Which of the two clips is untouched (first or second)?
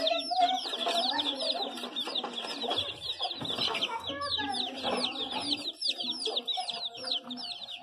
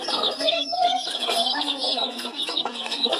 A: first